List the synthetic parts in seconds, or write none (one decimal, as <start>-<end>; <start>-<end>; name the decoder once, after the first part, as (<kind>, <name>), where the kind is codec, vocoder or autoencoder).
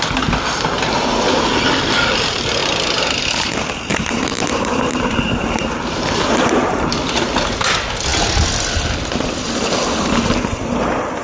3.9-6.9 (vocoder, BigVGAN v2)